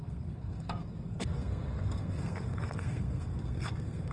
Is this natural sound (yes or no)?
no